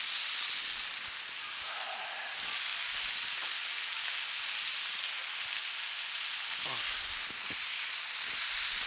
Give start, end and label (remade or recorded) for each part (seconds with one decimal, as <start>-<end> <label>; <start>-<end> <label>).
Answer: 0.0-8.9 recorded